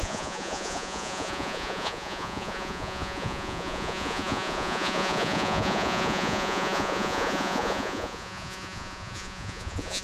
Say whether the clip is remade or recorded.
remade